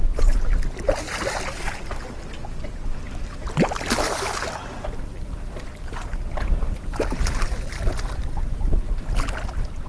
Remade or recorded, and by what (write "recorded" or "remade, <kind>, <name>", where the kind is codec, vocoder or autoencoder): recorded